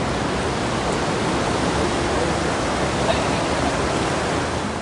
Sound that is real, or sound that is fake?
real